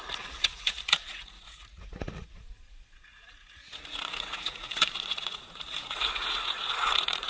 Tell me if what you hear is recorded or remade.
remade